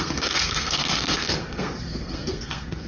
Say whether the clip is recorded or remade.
remade